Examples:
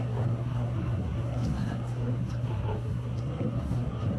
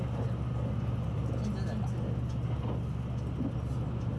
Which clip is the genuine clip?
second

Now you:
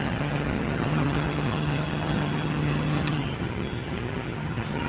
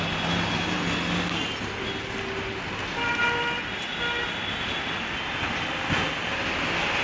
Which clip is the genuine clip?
second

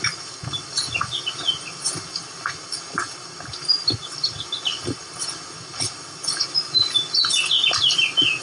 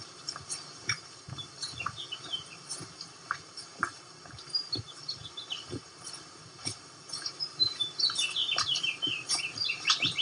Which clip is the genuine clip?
first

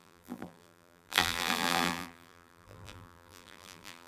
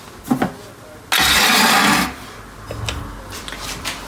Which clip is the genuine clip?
second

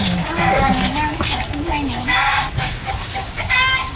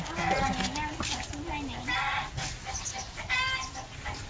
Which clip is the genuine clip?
second